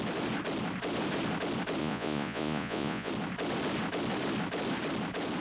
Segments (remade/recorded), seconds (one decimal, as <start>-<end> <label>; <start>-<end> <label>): 0.0-1.8 recorded; 1.8-3.1 remade; 3.1-5.4 recorded